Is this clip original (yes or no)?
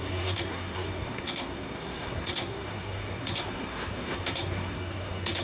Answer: no